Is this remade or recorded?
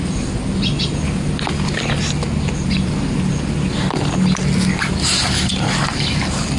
recorded